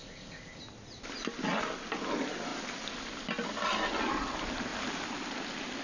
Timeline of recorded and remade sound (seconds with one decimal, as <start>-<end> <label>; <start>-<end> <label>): 0.0-0.6 remade; 0.6-5.8 recorded